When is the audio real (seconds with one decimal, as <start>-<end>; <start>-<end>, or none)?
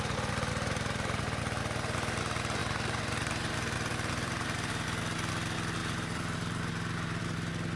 0.0-2.6; 4.7-5.8; 7.2-7.8